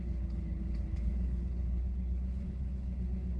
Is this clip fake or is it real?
fake